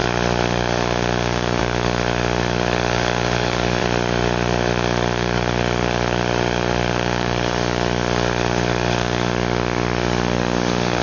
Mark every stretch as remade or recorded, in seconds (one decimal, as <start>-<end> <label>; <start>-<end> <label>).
0.0-11.0 remade